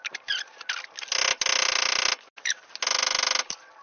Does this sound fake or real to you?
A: real